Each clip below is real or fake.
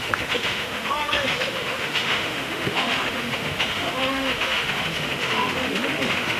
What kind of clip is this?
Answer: fake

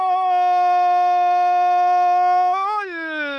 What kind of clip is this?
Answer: fake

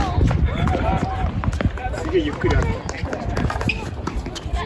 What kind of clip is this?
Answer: real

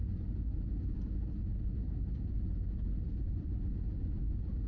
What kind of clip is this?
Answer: real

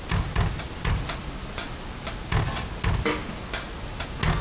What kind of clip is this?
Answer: real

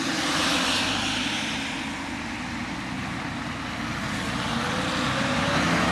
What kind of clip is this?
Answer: real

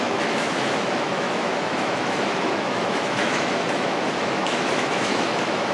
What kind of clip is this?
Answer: fake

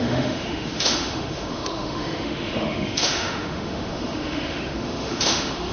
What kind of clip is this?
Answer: fake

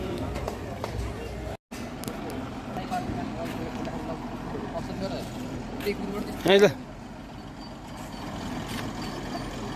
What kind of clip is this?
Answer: real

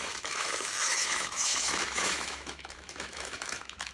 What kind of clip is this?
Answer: fake